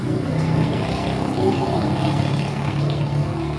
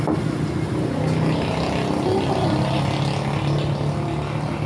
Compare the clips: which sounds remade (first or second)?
first